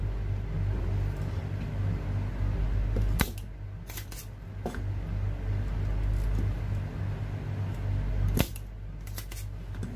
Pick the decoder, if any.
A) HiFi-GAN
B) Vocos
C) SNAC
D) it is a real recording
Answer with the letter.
D